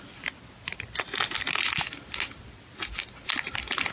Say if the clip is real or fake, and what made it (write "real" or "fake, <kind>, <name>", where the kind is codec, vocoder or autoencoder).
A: real